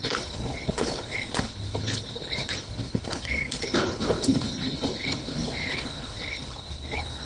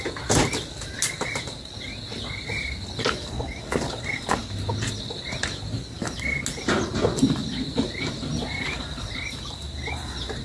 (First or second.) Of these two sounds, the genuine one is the second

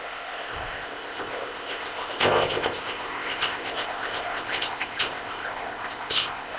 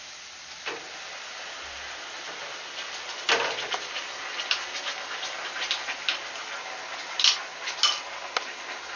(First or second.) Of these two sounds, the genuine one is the second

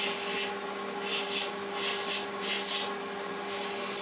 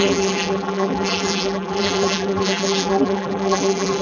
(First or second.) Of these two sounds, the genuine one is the first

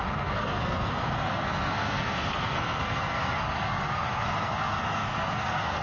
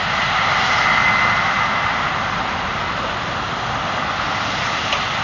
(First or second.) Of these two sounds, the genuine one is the second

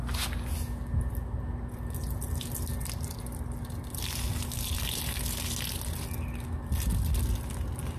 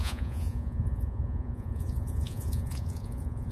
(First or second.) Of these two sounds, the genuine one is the first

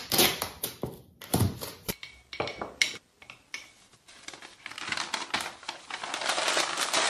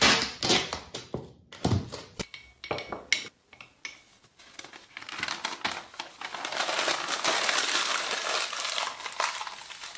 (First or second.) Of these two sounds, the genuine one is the second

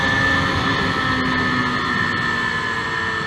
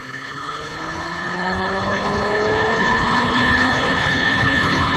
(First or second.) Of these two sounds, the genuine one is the first